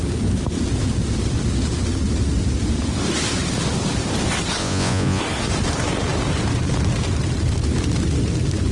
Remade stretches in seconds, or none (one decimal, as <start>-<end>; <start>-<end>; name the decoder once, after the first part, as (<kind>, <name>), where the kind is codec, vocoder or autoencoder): 4.6-5.2 (vocoder, Vocos)